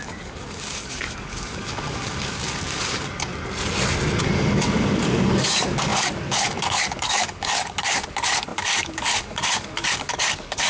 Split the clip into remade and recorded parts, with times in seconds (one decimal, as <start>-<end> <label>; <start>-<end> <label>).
0.0-3.3 remade; 3.3-4.2 recorded; 4.2-10.7 remade